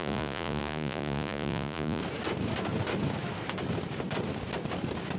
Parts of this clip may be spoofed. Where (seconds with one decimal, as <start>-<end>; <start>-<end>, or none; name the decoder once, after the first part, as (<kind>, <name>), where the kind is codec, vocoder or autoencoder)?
0.0-2.0 (vocoder, Vocos)